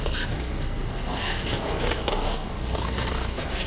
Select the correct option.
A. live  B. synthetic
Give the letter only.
B